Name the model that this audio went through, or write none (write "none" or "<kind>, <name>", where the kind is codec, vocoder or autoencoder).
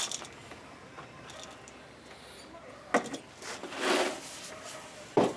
none